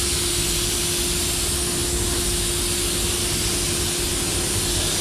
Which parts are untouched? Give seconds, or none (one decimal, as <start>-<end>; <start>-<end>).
0.0-5.0